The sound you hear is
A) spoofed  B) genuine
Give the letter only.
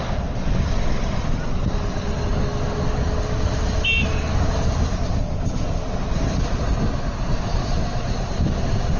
B